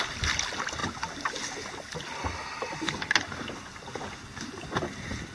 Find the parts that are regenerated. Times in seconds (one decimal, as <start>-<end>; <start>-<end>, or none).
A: none